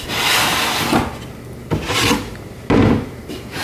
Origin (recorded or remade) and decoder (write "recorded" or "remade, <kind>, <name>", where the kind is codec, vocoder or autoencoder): recorded